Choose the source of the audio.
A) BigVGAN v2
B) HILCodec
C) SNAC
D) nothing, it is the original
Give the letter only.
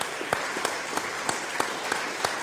D